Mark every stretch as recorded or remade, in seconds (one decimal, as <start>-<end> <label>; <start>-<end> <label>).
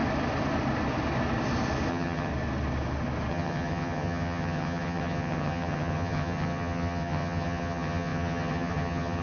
0.0-1.9 recorded; 1.9-2.3 remade; 2.3-3.3 recorded; 3.3-9.2 remade